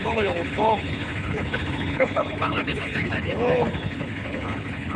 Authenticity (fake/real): fake